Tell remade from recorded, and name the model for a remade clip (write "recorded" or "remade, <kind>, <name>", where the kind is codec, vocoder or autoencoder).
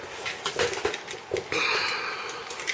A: recorded